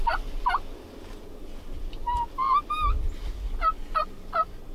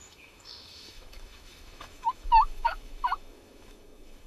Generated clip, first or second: second